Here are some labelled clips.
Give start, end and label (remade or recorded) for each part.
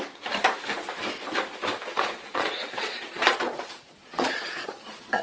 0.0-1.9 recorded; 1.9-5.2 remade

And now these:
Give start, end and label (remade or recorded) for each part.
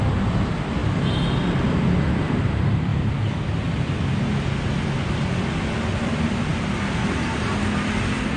0.0-0.8 remade; 0.8-1.4 recorded; 1.4-2.9 remade; 2.9-5.9 recorded; 5.9-6.5 remade; 6.5-7.4 recorded; 7.4-8.4 remade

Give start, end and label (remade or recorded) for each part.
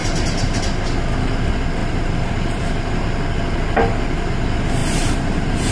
0.0-0.6 remade; 0.6-1.8 recorded; 1.8-3.0 remade; 3.0-4.8 recorded; 4.8-5.7 remade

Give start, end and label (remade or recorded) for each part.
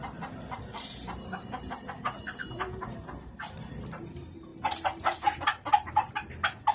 0.0-6.7 recorded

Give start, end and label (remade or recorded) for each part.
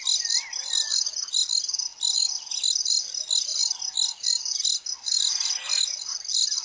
0.0-6.6 recorded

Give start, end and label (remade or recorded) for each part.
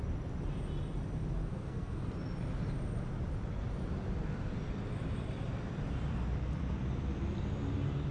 0.0-1.5 recorded; 1.5-2.1 remade; 2.1-8.1 recorded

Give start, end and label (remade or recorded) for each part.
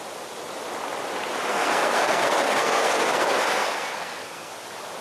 0.0-1.5 recorded; 1.5-4.5 remade; 4.5-5.0 recorded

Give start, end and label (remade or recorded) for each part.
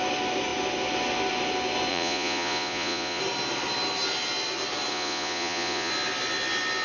0.0-1.9 recorded; 1.9-3.2 remade; 3.2-4.9 recorded; 4.9-5.9 remade; 5.9-6.8 recorded